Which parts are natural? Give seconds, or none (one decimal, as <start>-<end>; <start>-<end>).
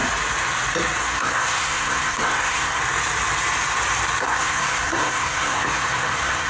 0.0-1.0; 2.8-4.2